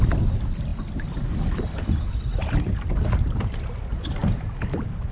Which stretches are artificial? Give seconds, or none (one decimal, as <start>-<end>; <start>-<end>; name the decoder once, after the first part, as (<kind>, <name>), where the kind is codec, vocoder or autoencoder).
none